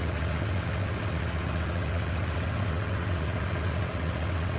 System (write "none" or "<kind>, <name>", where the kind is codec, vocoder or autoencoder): vocoder, WaveNeXt